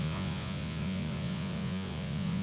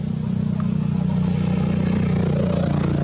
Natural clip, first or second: second